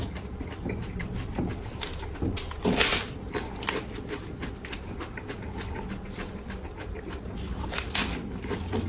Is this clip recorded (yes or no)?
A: yes